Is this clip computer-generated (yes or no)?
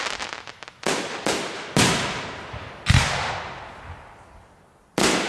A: no